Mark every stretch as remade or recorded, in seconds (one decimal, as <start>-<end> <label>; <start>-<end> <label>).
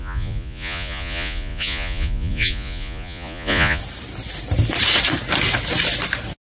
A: 0.0-3.8 remade; 3.8-6.5 recorded